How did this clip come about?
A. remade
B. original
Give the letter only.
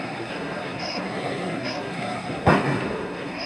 A